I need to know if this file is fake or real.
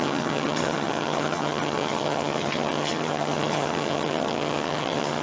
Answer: fake